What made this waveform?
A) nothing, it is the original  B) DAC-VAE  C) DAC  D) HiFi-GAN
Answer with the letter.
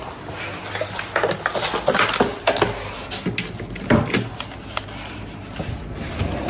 A